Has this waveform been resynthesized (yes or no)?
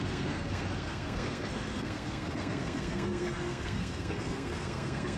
yes